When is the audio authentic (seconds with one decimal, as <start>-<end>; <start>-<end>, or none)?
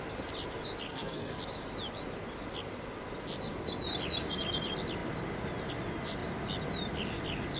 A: 0.0-0.9; 1.4-7.6